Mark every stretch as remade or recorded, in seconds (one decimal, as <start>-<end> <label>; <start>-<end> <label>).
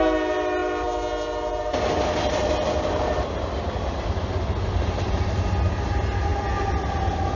0.0-7.4 recorded